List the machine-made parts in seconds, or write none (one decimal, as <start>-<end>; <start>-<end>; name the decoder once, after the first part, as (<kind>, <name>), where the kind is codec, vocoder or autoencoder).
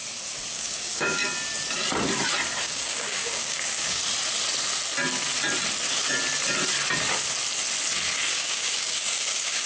0.5-1.2 (codec, DAC); 2.6-4.0; 8.3-9.7